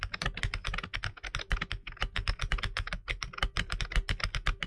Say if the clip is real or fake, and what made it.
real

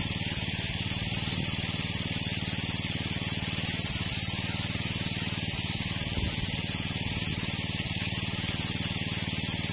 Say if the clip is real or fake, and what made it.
real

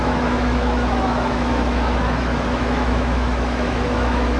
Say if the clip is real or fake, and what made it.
fake, autoencoder, DAC-VAE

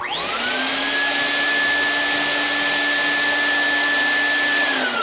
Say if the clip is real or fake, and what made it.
real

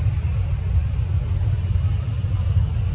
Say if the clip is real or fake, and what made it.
real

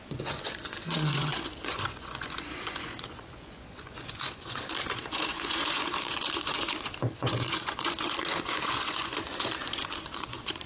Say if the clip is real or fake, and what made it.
fake, vocoder, Vocos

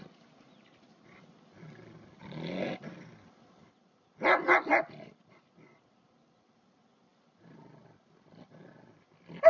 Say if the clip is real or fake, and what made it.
real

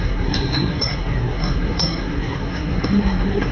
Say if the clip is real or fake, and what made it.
fake, codec, SNAC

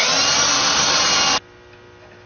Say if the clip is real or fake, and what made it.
real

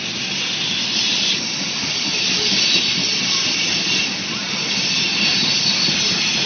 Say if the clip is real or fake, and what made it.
real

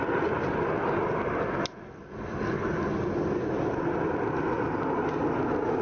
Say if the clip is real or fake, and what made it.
real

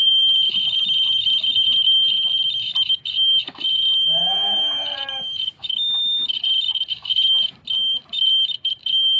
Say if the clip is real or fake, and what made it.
fake, vocoder, BigVGAN v2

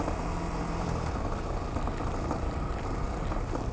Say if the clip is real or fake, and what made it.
real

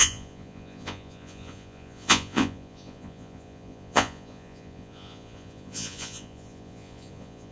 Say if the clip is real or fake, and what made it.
fake, vocoder, Vocos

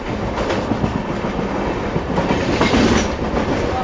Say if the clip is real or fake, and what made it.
real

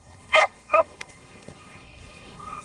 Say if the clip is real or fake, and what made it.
fake, codec, SNAC